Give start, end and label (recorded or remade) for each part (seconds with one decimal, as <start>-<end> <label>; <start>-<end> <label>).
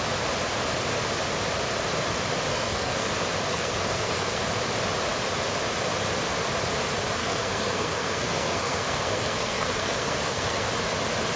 0.0-2.5 recorded; 2.5-3.1 remade; 3.1-3.5 recorded; 3.5-4.4 remade; 4.4-7.2 recorded; 7.2-10.7 remade; 10.7-11.4 recorded